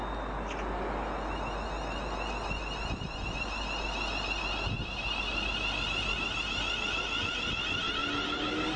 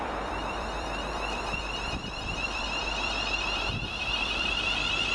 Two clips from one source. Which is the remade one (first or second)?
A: second